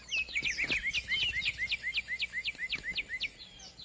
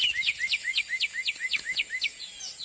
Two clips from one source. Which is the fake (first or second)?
second